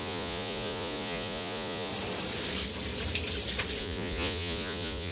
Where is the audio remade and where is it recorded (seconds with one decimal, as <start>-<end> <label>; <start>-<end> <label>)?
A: 0.0-1.9 remade; 1.9-3.8 recorded; 3.8-5.1 remade

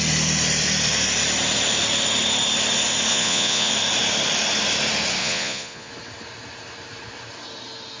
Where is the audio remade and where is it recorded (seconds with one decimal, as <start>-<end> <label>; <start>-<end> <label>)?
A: 0.0-3.1 recorded; 3.1-3.7 remade; 3.7-5.2 recorded; 5.2-5.9 remade; 5.9-8.0 recorded

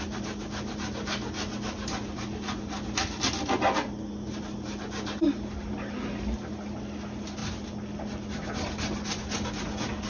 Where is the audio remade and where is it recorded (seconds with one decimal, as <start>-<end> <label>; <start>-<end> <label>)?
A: 0.0-10.1 recorded